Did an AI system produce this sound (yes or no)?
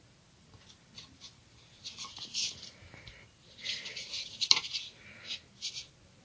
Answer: yes